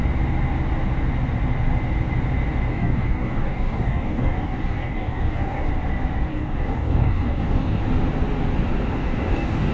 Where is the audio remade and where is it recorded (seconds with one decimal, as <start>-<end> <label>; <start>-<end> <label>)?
0.0-2.7 recorded; 2.7-5.7 remade; 5.7-6.3 recorded; 6.3-7.8 remade; 7.8-8.9 recorded; 8.9-9.7 remade